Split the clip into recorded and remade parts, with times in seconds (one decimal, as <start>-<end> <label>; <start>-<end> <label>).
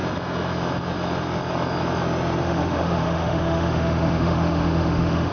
0.0-2.4 recorded; 2.4-5.3 remade